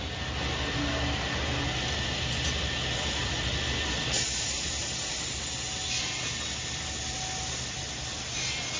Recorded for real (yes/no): yes